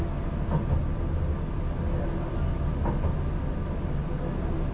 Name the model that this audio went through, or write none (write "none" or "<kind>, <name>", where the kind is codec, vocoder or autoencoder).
none